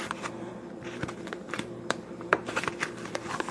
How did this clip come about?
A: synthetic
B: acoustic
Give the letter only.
A